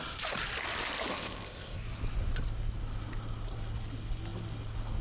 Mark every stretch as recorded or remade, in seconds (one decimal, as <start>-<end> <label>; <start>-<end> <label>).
0.0-1.1 recorded; 1.1-1.8 remade; 1.8-5.0 recorded